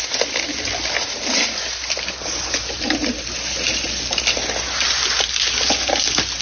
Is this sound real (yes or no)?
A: yes